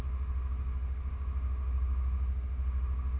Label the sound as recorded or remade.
recorded